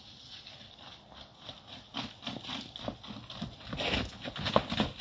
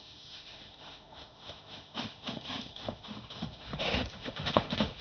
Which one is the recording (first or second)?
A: first